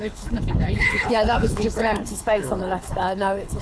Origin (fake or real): fake